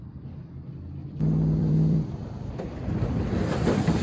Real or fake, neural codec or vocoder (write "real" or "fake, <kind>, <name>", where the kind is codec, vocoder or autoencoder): fake, vocoder, BigVGAN v2